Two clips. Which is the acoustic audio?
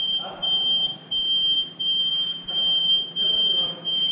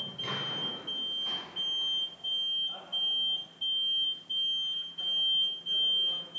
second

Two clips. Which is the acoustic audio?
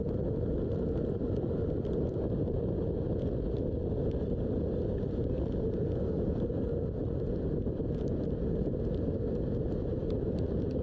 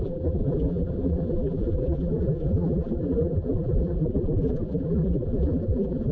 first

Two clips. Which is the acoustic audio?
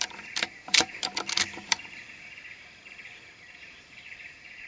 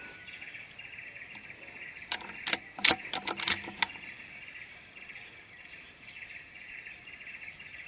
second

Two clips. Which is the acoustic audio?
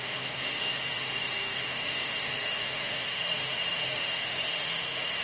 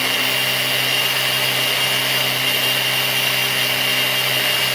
second